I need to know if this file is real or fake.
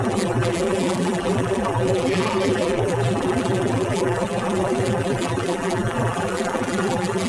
fake